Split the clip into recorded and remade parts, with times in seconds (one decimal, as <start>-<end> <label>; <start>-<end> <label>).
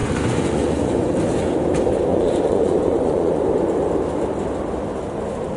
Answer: 0.0-1.1 remade; 1.1-2.1 recorded; 2.1-3.4 remade; 3.4-5.6 recorded